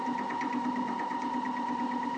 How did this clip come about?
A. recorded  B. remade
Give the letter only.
B